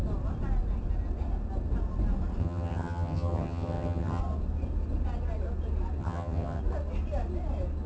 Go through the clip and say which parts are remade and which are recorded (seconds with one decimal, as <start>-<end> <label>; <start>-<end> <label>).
0.0-2.4 recorded; 2.4-4.2 remade; 4.2-6.0 recorded; 6.0-6.6 remade; 6.6-7.9 recorded